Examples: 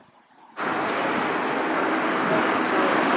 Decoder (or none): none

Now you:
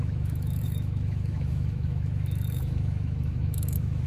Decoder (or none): autoencoder, DAC-VAE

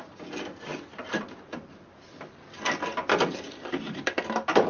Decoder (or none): none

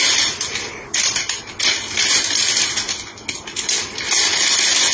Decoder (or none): none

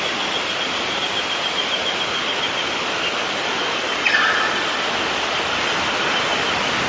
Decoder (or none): none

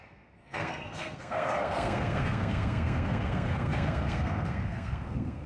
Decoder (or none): codec, SNAC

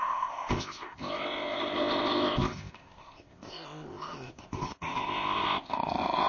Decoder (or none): codec, ZipCodec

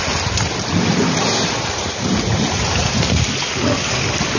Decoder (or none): none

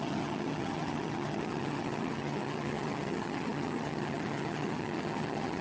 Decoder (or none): vocoder, HiFi-GAN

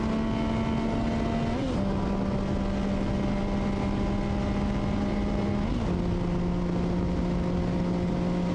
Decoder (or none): none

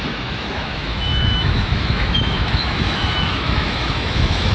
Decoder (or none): autoencoder, DAC-VAE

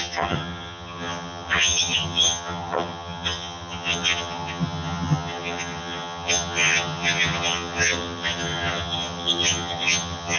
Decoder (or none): vocoder, HiFi-GAN